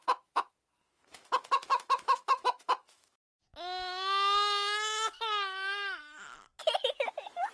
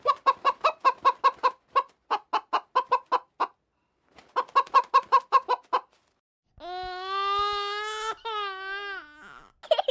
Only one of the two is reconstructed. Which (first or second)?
first